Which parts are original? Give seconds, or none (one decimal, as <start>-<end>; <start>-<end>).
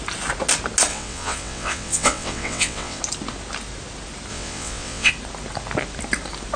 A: 0.0-0.9; 3.0-4.3; 5.1-6.6